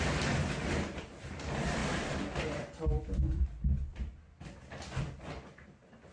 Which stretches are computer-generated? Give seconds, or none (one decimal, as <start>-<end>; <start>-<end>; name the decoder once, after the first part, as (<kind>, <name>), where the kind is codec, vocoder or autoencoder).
none